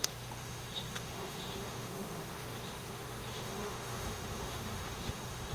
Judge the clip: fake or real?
fake